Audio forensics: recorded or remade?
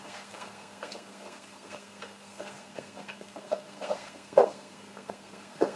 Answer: remade